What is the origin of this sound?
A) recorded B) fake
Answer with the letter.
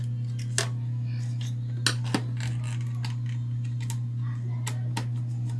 A